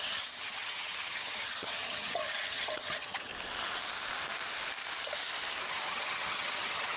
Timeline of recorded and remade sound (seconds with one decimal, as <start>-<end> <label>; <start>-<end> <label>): 0.0-3.3 remade; 3.3-5.7 recorded; 5.7-7.0 remade